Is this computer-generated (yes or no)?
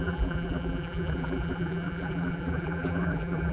yes